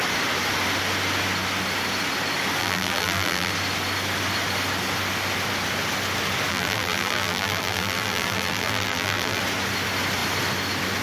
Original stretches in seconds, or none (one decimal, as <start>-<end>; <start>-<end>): 0.0-2.6; 3.5-6.5; 9.4-11.0